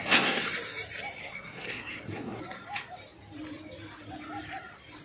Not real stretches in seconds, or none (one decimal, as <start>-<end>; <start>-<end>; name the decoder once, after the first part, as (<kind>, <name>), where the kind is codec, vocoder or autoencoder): 0.0-0.5 (codec, SNAC); 1.2-2.4